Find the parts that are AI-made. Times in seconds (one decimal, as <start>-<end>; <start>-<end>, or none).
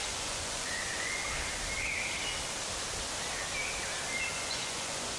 0.0-1.2; 4.3-5.2